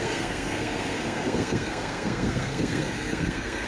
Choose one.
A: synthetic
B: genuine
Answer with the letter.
A